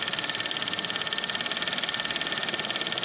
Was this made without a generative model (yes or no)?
yes